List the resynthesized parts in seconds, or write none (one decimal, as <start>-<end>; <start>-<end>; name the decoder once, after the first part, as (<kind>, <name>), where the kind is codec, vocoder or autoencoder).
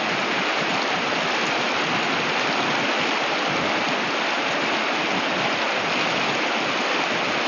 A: none